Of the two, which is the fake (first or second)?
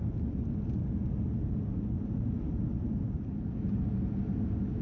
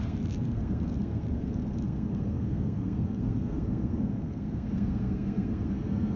second